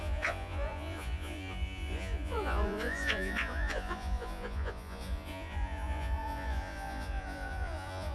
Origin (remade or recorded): remade